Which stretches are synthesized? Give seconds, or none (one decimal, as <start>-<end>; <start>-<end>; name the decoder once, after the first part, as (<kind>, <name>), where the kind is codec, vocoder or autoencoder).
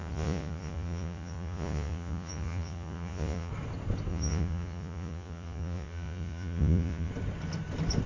0.0-3.5 (vocoder, Vocos); 4.1-7.1